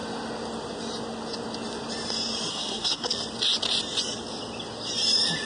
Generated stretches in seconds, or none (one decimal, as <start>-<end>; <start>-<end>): 2.5-3.1